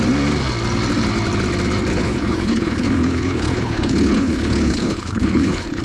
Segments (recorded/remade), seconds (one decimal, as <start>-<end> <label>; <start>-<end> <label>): 0.0-1.9 recorded; 1.9-5.8 remade